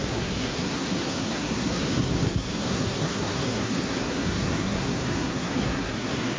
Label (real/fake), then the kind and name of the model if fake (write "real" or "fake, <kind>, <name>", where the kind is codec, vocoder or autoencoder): fake, codec, SNAC